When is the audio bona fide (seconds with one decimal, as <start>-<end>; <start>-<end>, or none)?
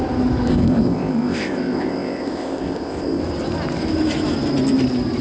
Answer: 0.0-0.5; 3.2-5.2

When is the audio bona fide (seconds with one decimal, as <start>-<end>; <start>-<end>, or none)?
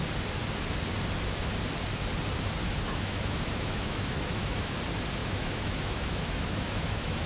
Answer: 0.0-2.6; 4.8-5.2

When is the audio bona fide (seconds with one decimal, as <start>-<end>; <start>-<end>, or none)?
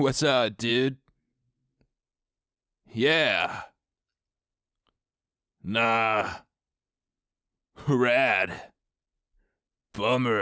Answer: 0.0-10.4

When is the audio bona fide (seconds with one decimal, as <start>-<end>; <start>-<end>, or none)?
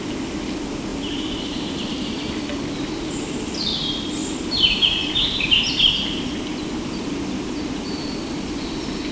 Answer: 0.0-0.9; 1.9-4.2; 6.2-9.1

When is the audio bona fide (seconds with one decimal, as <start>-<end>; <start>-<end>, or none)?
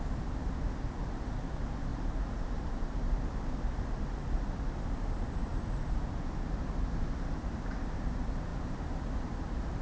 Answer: 0.0-1.9; 3.1-8.5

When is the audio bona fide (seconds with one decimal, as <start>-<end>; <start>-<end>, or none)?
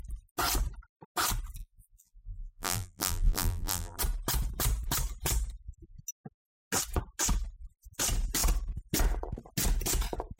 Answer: 0.0-1.6; 4.0-10.4